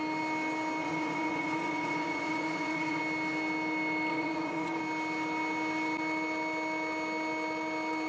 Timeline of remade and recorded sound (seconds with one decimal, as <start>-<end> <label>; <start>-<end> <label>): 0.0-0.8 recorded; 0.8-3.0 remade; 3.0-4.1 recorded; 4.1-4.8 remade; 4.8-8.1 recorded